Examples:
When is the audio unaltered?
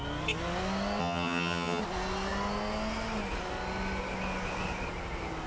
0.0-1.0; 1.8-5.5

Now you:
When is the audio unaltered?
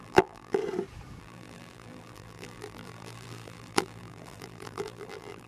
0.6-1.2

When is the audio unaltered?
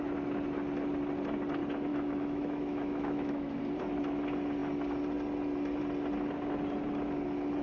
0.0-1.9; 3.6-7.6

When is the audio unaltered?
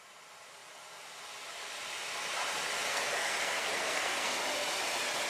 0.0-2.9; 4.4-5.3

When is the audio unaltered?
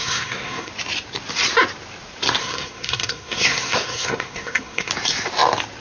0.7-2.4; 4.9-5.8